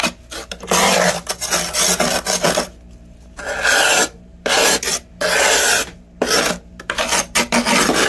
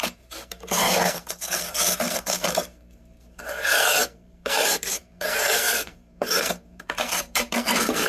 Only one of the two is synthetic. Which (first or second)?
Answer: second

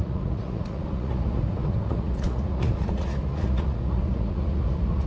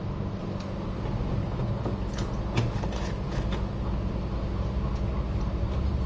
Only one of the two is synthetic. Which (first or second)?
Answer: first